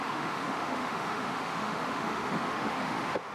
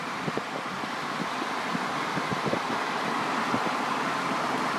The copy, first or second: first